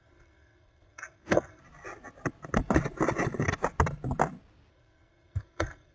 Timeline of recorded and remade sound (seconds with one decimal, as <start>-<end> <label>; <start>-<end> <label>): 0.0-1.6 remade; 1.6-4.7 recorded; 4.7-5.9 remade